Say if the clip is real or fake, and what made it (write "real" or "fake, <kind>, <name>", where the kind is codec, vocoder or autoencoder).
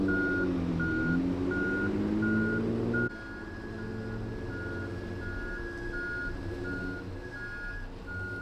real